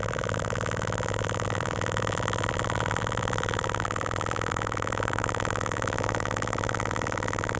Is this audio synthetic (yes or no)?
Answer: yes